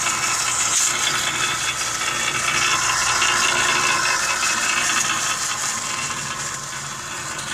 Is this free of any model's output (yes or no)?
yes